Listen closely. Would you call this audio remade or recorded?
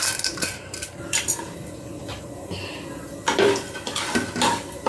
remade